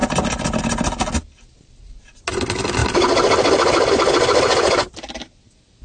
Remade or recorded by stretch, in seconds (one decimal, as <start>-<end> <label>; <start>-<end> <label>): 0.0-5.8 recorded